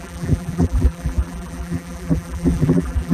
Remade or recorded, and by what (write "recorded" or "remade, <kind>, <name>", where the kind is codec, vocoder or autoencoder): remade, vocoder, BigVGAN v2